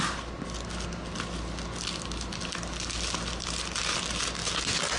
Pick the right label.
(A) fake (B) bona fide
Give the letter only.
B